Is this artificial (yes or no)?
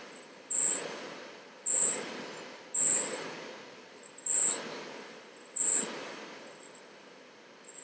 no